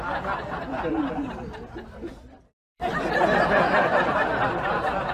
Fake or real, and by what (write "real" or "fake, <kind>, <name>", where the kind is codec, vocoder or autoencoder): real